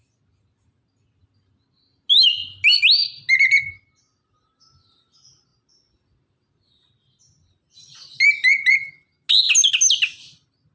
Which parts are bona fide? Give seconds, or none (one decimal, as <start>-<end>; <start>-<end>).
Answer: 0.0-10.7